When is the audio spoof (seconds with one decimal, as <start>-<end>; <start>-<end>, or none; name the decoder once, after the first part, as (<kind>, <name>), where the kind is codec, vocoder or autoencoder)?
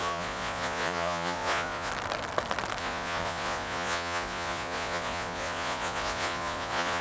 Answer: 0.0-1.9 (vocoder, Vocos); 2.8-7.0